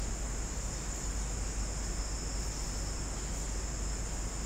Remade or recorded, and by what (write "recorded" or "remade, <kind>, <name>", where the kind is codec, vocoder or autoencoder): recorded